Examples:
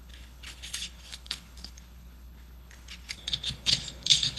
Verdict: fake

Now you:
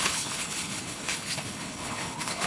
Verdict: fake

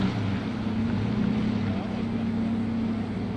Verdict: real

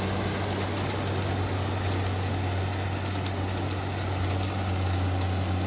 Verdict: real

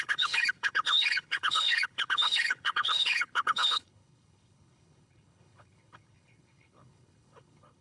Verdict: fake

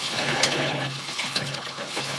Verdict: fake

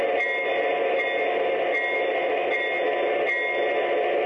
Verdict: real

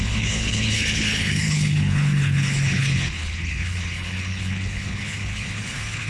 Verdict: fake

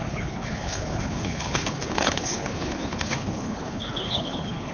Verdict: fake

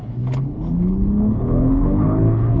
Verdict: fake